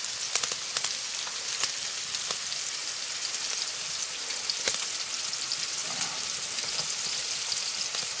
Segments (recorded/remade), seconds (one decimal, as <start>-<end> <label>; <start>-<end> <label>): 0.0-8.2 recorded